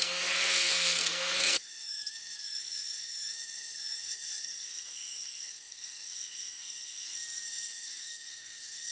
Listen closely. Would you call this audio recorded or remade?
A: remade